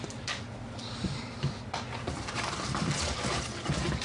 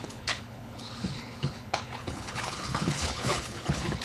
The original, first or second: first